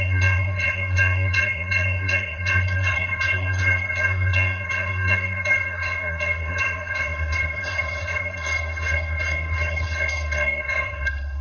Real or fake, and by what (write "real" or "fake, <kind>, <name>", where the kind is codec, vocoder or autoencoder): fake, codec, SNAC